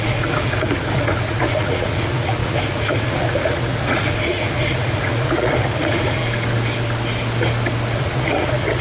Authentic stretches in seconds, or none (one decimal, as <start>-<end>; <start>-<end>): 6.2-8.0